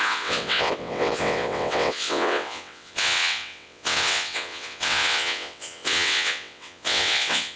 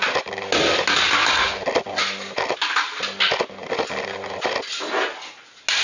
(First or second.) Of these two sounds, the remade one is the first